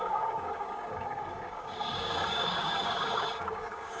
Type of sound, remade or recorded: remade